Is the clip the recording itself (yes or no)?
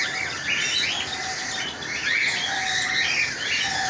yes